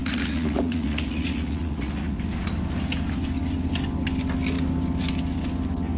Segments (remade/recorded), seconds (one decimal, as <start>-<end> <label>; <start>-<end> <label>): 0.0-2.2 remade; 2.2-6.0 recorded